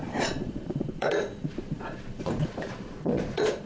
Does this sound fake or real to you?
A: fake